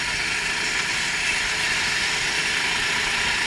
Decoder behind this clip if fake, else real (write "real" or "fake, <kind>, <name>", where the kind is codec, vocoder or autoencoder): real